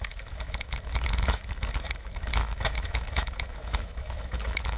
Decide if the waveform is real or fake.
fake